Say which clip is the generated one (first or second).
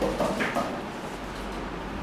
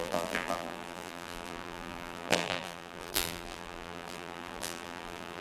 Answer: second